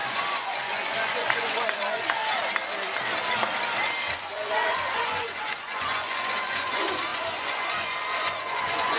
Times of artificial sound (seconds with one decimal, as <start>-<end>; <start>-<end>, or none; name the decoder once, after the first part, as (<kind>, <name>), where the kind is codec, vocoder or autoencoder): 0.0-2.2 (vocoder, Vocos); 4.2-9.0